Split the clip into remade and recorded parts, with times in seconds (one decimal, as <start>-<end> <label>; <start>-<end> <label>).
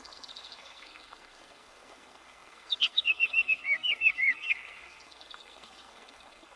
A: 0.0-6.6 remade